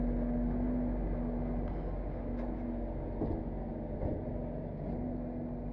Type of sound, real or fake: real